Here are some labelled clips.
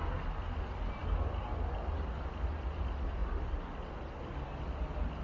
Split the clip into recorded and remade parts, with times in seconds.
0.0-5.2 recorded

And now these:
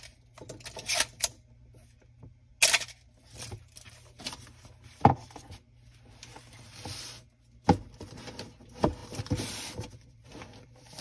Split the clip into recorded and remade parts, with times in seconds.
0.0-9.0 recorded; 9.0-11.0 remade

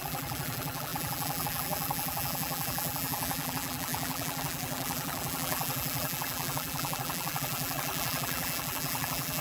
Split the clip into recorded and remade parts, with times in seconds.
0.0-9.4 remade